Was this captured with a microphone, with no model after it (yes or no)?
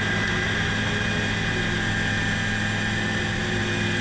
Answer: yes